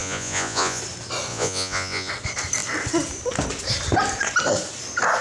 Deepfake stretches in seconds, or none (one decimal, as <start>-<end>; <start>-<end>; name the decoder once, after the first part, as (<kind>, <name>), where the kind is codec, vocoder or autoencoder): 0.0-0.8 (vocoder, Vocos); 1.3-2.1